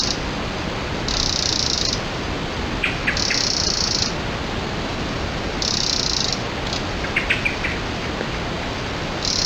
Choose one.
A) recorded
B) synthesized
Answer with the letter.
A